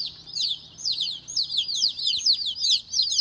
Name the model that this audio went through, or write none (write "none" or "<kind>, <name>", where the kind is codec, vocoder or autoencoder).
none